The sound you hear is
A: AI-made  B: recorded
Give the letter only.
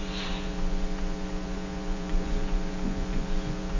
A